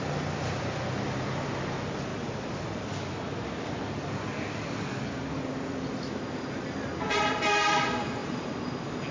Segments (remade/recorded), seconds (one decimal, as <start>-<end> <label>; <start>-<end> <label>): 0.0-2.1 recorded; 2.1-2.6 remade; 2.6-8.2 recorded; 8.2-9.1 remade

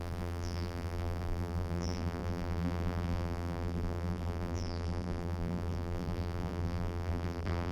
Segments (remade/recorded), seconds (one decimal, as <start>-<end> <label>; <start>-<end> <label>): 0.0-7.7 remade

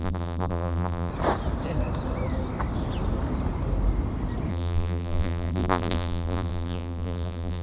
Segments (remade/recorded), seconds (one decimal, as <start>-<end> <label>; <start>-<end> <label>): 0.0-1.1 remade; 1.1-4.5 recorded; 4.5-7.6 remade

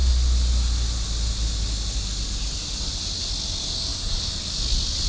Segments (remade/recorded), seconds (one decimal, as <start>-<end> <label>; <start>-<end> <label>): 0.0-5.1 recorded

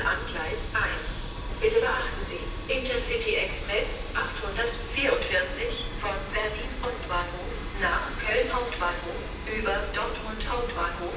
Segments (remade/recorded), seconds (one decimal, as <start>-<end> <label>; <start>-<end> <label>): 0.0-11.2 remade

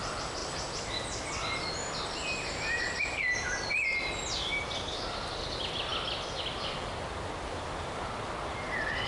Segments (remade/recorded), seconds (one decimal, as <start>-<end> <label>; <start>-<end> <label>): 0.0-9.1 recorded

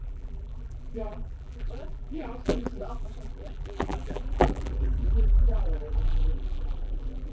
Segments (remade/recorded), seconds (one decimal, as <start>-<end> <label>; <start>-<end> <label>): 0.0-7.3 remade